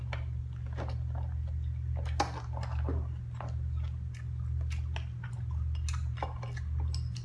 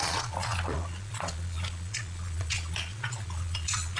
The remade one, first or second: second